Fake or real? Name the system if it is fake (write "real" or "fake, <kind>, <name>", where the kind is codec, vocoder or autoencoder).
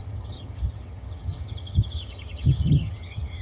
fake, vocoder, HiFi-GAN